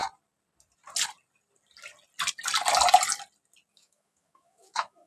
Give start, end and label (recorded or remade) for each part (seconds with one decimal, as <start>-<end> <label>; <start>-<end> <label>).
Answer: 0.0-3.7 recorded; 3.7-5.1 remade